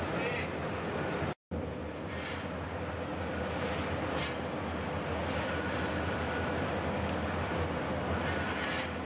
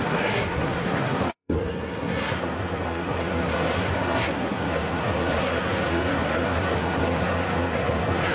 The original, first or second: first